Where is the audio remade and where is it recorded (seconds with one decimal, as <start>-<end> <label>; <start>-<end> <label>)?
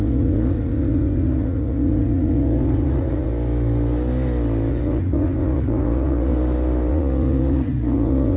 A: 0.0-3.3 remade; 3.3-4.7 recorded; 4.7-6.3 remade; 6.3-6.9 recorded; 6.9-8.4 remade